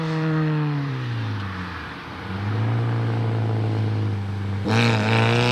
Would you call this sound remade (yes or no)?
yes